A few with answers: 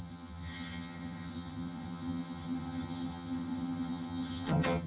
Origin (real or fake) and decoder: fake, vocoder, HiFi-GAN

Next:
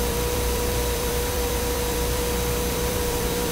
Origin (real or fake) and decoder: fake, vocoder, BigVGAN v2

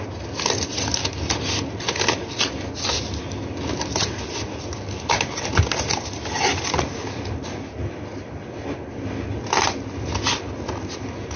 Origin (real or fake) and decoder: real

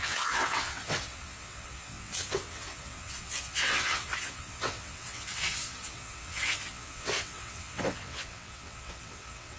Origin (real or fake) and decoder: fake, vocoder, WaveNeXt